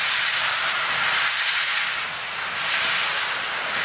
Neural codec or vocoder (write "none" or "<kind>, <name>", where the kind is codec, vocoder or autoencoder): none